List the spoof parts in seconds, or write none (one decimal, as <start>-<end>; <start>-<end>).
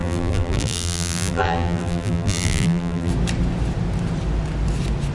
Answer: 0.0-3.1